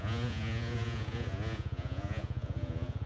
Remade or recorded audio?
remade